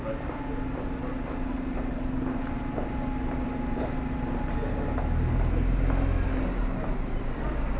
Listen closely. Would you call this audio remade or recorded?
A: recorded